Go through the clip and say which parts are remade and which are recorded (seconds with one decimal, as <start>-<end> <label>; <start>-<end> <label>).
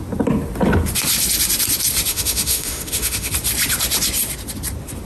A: 0.0-2.1 recorded; 2.1-3.3 remade; 3.3-5.1 recorded